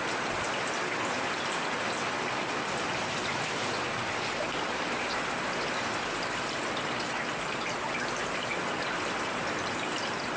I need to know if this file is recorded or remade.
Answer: recorded